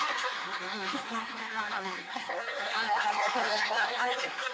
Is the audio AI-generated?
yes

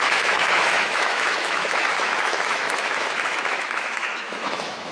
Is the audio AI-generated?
yes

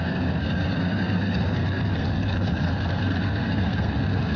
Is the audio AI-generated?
yes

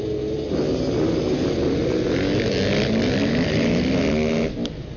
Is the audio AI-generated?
no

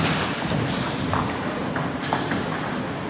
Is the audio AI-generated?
no